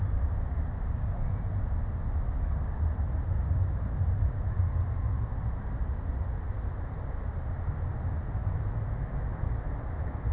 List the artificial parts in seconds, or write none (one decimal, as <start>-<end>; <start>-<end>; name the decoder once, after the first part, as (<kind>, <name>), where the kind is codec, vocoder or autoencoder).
8.4-9.6 (autoencoder, DAC-VAE)